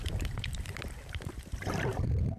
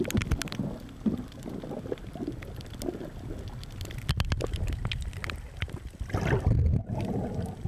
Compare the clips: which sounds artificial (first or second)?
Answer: first